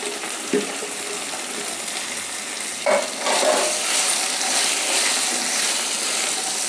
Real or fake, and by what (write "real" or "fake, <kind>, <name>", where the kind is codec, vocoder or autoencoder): real